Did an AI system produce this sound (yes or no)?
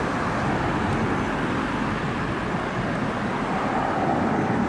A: no